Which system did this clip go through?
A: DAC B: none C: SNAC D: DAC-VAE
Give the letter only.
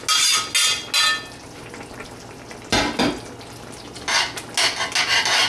B